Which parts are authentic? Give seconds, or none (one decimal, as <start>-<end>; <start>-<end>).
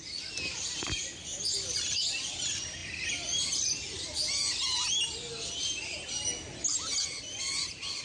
0.0-8.0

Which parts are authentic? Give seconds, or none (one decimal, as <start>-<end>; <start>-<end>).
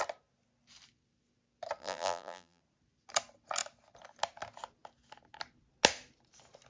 0.0-1.8; 2.6-6.7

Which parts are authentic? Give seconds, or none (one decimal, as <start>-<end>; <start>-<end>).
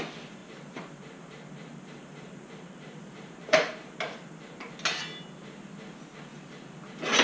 0.0-0.4; 4.7-6.3; 6.8-7.2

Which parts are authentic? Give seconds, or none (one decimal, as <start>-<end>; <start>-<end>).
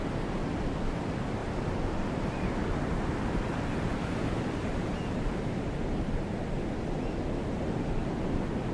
0.0-0.4; 0.9-1.4; 6.5-7.4